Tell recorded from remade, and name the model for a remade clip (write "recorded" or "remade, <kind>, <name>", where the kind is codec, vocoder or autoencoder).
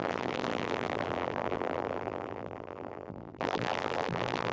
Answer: remade, vocoder, BigVGAN v2